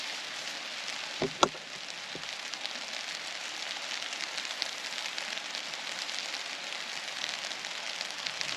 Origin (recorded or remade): recorded